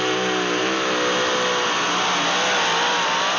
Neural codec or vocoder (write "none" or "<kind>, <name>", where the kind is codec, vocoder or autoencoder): none